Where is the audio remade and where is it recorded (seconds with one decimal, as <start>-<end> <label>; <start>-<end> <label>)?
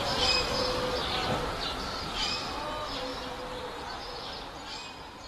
0.0-5.3 recorded